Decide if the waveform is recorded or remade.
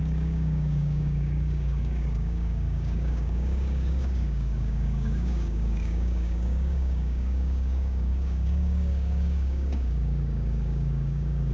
remade